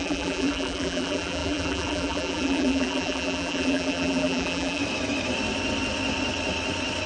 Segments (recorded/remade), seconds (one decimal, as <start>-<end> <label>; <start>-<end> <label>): 0.0-4.8 remade; 4.8-7.1 recorded